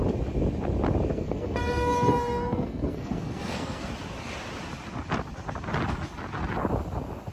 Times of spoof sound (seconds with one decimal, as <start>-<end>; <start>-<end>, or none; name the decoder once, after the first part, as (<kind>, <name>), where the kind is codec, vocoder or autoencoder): 1.1-3.9 (codec, SNAC)